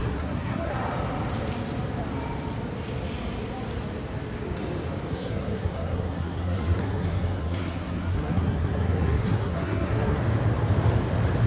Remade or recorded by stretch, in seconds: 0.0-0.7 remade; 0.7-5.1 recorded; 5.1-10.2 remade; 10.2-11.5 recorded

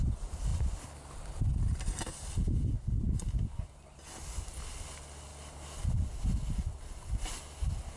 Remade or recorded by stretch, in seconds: 0.0-8.0 recorded

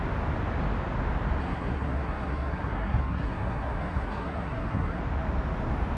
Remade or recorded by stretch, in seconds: 0.0-1.4 recorded; 1.4-5.0 remade; 5.0-6.0 recorded

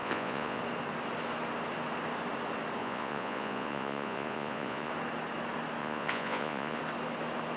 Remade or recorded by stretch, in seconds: 0.0-0.6 remade; 0.6-2.8 recorded; 2.8-4.9 remade; 4.9-5.8 recorded; 5.8-6.8 remade; 6.8-7.6 recorded

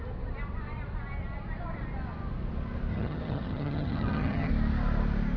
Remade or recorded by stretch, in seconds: 0.0-2.9 recorded; 2.9-4.5 remade; 4.5-5.4 recorded

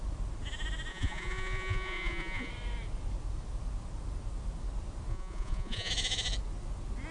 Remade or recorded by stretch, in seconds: 0.0-0.9 recorded; 0.9-2.5 remade; 2.5-5.1 recorded; 5.1-5.9 remade; 5.9-7.1 recorded

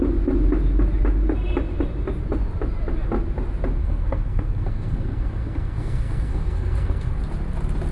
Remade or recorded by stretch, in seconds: 0.0-3.8 recorded; 3.8-7.2 remade; 7.2-7.9 recorded